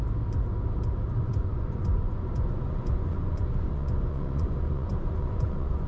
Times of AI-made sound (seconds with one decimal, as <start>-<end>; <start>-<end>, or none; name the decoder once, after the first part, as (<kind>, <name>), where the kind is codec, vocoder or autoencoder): 1.2-5.9 (vocoder, Vocos)